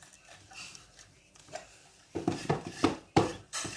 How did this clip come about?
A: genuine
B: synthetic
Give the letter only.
B